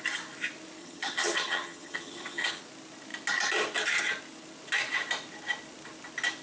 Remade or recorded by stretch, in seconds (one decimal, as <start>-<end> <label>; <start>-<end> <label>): 0.0-0.8 recorded; 0.8-2.6 remade; 2.6-6.4 recorded